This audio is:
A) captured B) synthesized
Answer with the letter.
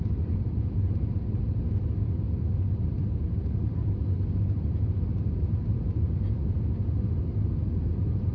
B